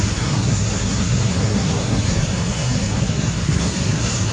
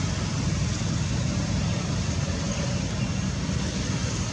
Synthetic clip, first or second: first